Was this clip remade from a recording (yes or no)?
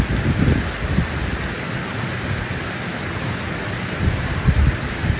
no